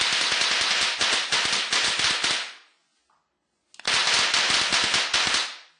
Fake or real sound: real